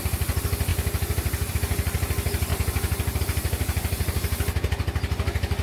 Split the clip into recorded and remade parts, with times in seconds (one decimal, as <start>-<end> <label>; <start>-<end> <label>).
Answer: 0.0-2.5 recorded; 2.5-3.2 remade; 3.2-5.6 recorded